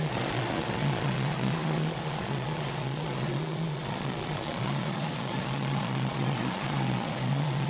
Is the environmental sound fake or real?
fake